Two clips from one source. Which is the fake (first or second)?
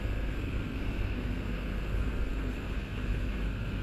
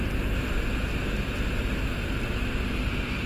first